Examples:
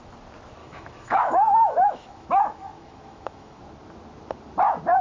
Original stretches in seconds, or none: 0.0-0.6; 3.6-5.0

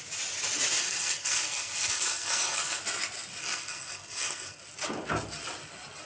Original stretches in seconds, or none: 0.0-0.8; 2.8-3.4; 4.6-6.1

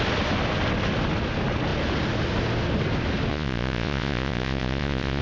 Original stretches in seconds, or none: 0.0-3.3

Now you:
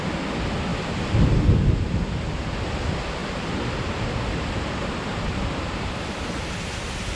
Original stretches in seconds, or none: 0.0-7.2

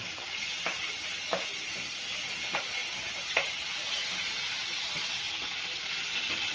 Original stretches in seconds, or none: 0.0-6.5

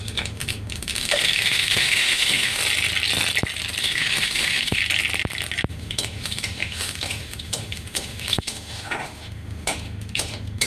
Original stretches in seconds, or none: 2.6-3.8; 4.8-5.7

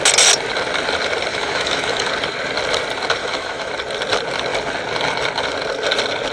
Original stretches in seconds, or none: 0.0-1.3; 2.1-3.2; 3.7-6.3

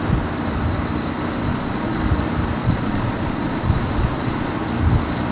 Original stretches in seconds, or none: 0.0-1.5; 2.0-2.6; 4.5-5.3